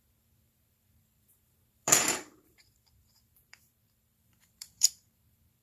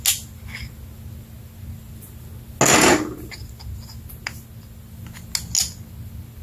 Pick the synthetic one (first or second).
first